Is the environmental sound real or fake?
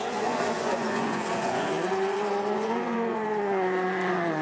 fake